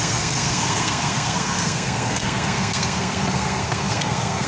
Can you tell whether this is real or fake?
fake